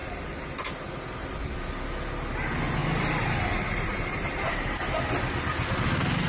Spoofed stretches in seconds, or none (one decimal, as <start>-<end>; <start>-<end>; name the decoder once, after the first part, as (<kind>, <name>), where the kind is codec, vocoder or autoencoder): 2.8-5.1 (vocoder, BigVGAN v2)